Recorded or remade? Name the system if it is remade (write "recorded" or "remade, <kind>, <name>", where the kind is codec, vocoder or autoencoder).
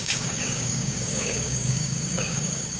remade, codec, DAC